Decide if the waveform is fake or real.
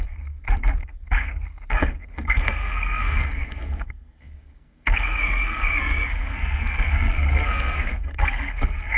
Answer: fake